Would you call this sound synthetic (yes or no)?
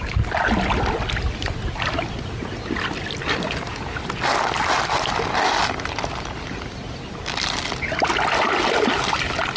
no